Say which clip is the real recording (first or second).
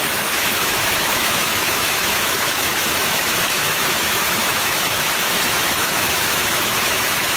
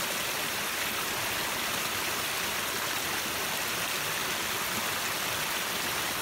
second